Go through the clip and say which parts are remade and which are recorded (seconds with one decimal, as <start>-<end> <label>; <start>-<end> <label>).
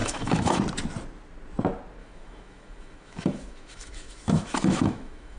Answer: 0.0-0.6 remade; 0.6-2.0 recorded; 2.0-5.4 remade